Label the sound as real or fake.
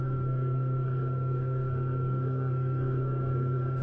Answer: fake